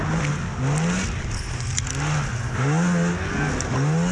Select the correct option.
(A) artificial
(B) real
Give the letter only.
B